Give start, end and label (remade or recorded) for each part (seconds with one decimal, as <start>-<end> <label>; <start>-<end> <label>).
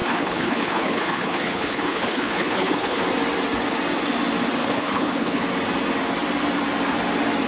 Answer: 0.0-3.0 remade; 3.0-4.6 recorded; 4.6-5.4 remade; 5.4-7.5 recorded